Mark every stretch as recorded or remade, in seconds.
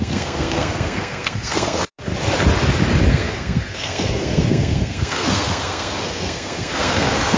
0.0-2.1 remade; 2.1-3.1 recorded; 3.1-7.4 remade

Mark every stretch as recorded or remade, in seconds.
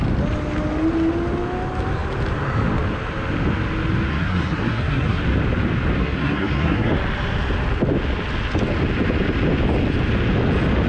0.0-4.1 recorded; 4.1-5.2 remade; 5.2-6.0 recorded; 6.0-6.9 remade; 6.9-10.9 recorded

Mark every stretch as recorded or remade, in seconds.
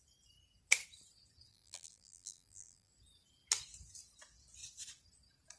0.0-1.5 recorded; 1.5-2.9 remade; 2.9-5.6 recorded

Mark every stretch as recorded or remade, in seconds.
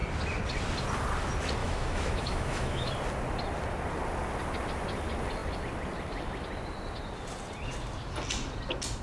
0.0-1.6 recorded; 1.6-2.9 remade; 2.9-9.0 recorded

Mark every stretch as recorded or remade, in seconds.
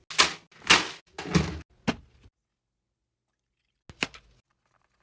0.0-5.0 recorded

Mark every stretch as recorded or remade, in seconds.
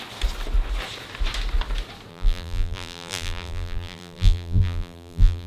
0.0-2.1 recorded; 2.1-5.5 remade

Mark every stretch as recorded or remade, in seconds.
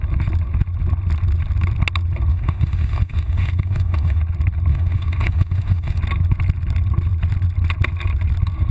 0.0-2.3 recorded; 2.3-4.2 remade; 4.2-4.7 recorded; 4.7-6.0 remade; 6.0-8.7 recorded